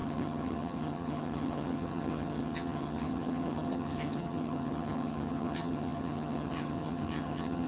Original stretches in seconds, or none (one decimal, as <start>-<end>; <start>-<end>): none